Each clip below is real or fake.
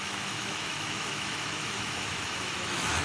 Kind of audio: fake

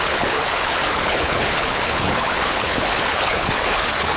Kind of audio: fake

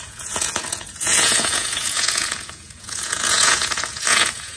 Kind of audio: fake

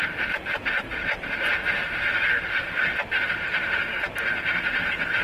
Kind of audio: real